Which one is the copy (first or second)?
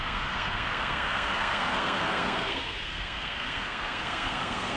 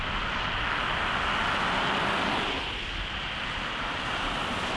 first